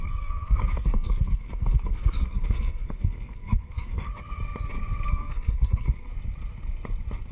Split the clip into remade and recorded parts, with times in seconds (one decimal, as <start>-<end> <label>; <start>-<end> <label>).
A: 0.0-4.1 remade; 4.1-5.1 recorded; 5.1-6.1 remade; 6.1-7.3 recorded